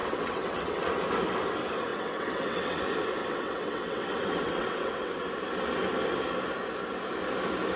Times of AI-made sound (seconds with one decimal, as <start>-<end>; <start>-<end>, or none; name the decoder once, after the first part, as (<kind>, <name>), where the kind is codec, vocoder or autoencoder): 0.0-0.8 (vocoder, WaveNeXt); 1.9-2.8; 3.2-5.3